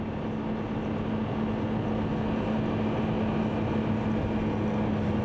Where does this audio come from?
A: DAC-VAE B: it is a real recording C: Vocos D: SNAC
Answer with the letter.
B